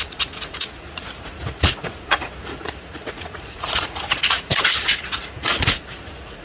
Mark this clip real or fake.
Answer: fake